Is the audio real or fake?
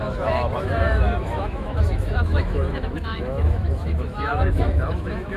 fake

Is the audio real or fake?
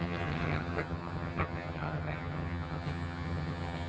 fake